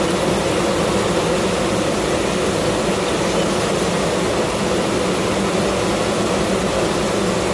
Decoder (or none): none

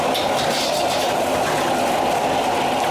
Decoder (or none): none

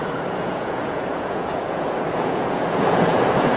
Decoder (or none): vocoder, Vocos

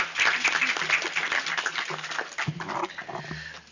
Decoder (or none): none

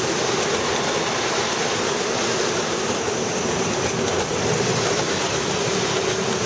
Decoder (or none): none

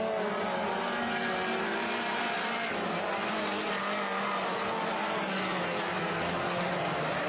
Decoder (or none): none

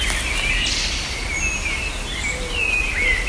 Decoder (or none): none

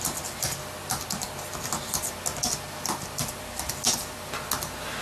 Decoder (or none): none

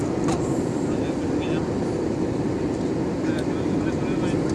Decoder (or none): none